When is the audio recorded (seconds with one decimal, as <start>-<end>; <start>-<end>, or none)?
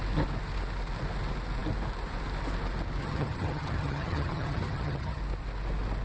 0.0-3.0; 5.2-6.0